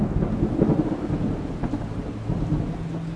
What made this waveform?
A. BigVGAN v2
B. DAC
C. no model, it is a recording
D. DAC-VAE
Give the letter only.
C